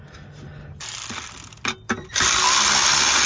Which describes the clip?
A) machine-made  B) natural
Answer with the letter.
B